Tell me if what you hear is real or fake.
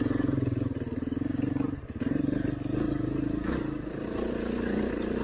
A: real